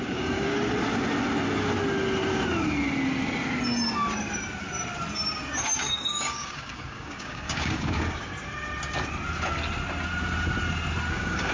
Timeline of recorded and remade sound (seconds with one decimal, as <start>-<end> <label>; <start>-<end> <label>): 0.0-0.7 remade; 0.7-5.7 recorded; 5.7-8.3 remade; 8.3-11.1 recorded; 11.1-11.5 remade